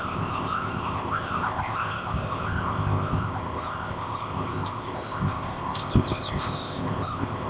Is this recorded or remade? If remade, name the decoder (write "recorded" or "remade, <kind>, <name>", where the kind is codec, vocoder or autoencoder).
remade, codec, ZipCodec